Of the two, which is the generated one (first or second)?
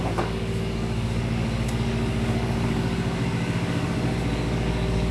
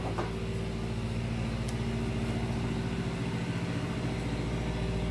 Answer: first